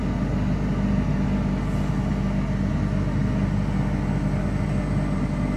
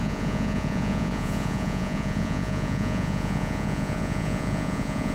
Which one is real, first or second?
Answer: first